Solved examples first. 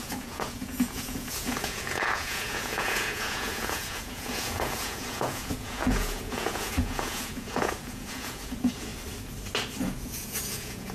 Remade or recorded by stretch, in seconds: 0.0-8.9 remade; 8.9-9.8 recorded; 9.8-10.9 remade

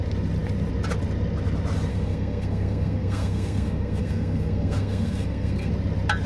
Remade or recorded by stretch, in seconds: 0.0-1.9 recorded; 1.9-5.7 remade; 5.7-6.3 recorded

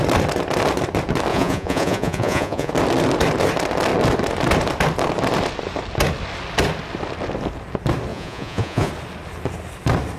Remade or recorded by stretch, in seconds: 0.0-1.3 recorded; 1.3-2.7 remade; 2.7-8.1 recorded; 8.1-8.9 remade; 8.9-10.2 recorded

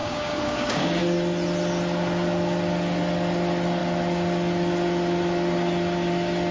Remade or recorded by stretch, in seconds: 0.0-1.0 remade; 1.0-6.5 recorded

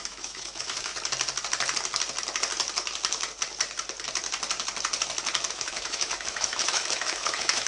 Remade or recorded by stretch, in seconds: 0.0-0.9 remade; 0.9-5.5 recorded; 5.5-7.7 remade

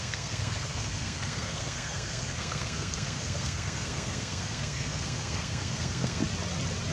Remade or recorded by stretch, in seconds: 0.0-6.2 remade; 6.2-6.9 recorded

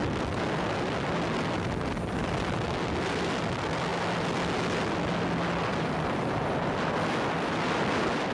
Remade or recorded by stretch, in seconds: 0.0-8.3 recorded

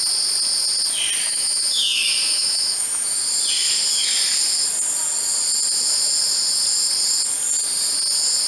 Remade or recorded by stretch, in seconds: 0.0-1.3 recorded; 1.3-3.2 remade; 3.2-8.5 recorded